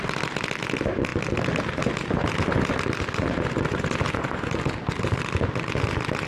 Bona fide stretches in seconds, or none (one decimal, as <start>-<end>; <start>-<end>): 0.0-6.3

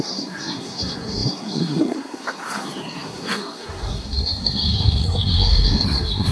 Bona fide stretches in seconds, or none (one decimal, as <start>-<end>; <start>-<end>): none

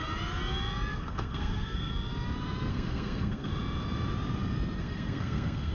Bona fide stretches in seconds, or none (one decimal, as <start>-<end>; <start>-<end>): 0.0-0.9; 1.9-2.7; 3.5-4.8

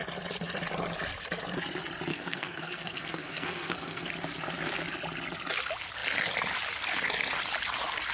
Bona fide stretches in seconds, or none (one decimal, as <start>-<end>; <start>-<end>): 0.0-2.1; 4.1-8.1

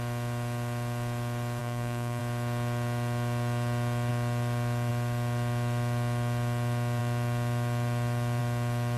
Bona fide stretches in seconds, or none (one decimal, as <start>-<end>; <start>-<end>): 0.0-1.6; 2.2-9.0

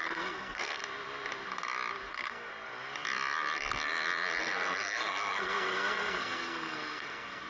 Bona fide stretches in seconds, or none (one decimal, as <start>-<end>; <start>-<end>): 0.8-2.1; 2.5-4.4